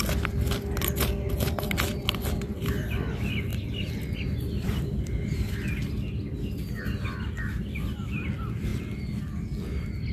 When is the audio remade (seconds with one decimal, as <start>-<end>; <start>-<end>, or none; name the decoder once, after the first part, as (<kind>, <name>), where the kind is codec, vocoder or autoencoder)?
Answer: 3.5-5.0 (vocoder, BigVGAN v2)